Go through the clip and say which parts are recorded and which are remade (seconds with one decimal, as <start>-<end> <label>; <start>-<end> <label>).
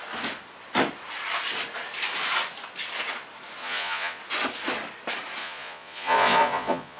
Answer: 0.0-3.6 recorded; 3.6-4.2 remade; 4.2-5.4 recorded; 5.4-7.0 remade